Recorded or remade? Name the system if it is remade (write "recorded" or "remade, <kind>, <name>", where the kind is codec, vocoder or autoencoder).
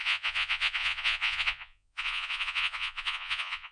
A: remade, vocoder, Vocos